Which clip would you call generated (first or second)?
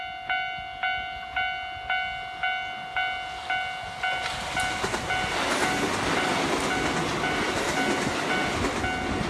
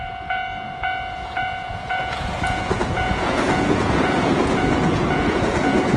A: second